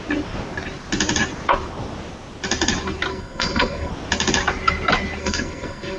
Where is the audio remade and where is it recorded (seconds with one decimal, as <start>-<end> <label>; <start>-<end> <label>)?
0.0-3.1 recorded; 3.1-3.9 remade; 3.9-5.2 recorded; 5.2-6.0 remade